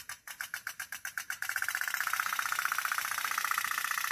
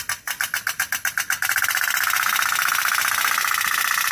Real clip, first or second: second